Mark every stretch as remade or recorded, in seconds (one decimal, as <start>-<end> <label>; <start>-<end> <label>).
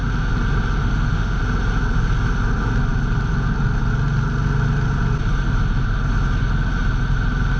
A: 0.0-0.8 recorded; 0.8-1.4 remade; 1.4-7.6 recorded